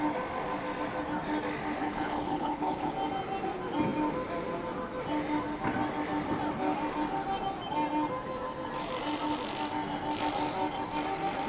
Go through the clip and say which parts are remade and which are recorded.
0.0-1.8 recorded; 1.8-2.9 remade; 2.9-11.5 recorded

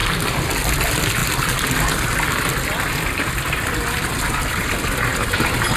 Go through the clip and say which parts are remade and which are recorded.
0.0-0.7 remade; 0.7-1.2 recorded; 1.2-4.7 remade; 4.7-5.8 recorded

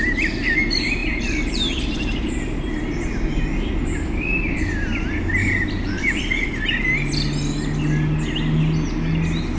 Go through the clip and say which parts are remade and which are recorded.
0.0-1.0 recorded; 1.0-2.8 remade; 2.8-4.3 recorded; 4.3-6.5 remade; 6.5-9.6 recorded